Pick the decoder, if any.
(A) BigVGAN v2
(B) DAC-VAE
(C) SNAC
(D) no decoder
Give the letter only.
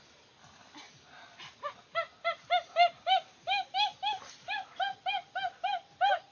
D